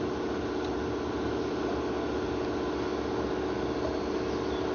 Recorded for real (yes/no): yes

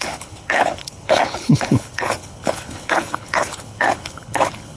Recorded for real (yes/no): no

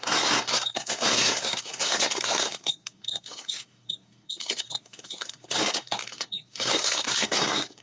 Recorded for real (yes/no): no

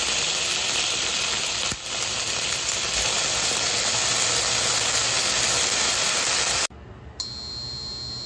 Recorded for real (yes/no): yes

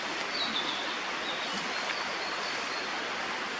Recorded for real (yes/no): yes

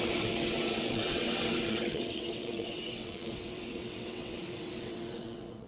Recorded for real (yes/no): no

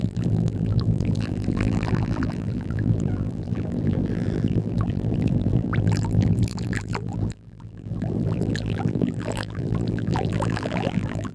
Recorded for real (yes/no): no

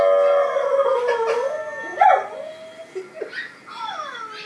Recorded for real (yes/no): yes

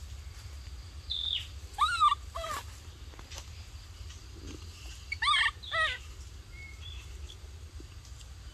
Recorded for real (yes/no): yes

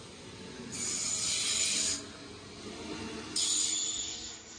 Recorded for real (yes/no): yes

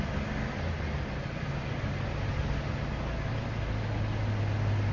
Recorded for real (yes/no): yes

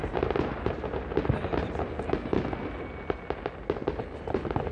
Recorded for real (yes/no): yes